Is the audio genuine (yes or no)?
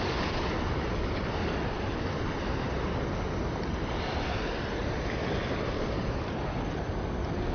yes